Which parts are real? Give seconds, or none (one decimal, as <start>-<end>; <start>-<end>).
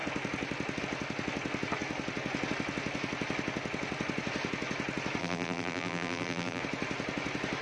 0.0-5.2; 6.6-7.6